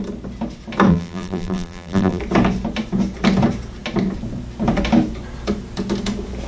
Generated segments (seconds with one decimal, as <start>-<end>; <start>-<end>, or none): 0.9-2.2